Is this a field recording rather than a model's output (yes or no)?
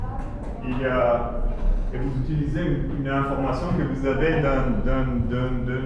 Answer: yes